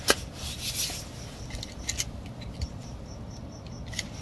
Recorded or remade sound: recorded